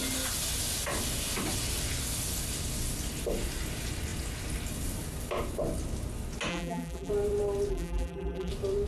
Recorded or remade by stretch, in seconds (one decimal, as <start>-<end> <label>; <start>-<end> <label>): 0.0-6.5 recorded; 6.5-7.1 remade; 7.1-7.7 recorded; 7.7-8.5 remade; 8.5-8.9 recorded